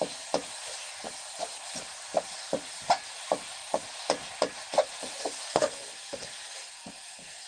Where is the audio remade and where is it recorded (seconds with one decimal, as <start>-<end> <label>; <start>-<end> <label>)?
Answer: 0.0-5.5 recorded; 5.5-7.5 remade